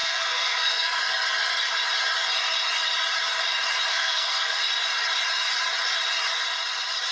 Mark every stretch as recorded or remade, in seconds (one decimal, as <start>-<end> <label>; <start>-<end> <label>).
0.0-1.0 remade; 1.0-3.9 recorded; 3.9-4.6 remade; 4.6-7.1 recorded